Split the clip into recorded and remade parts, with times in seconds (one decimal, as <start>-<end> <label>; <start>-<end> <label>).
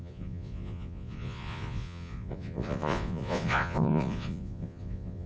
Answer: 0.0-5.3 remade